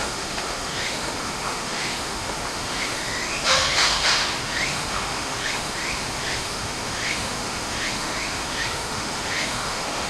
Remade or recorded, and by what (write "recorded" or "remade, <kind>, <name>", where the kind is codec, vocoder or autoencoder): remade, autoencoder, DAC-VAE